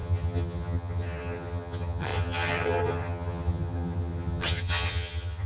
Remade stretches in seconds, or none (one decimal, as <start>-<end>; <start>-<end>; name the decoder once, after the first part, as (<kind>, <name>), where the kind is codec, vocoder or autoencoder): 0.0-5.5 (vocoder, HiFi-GAN)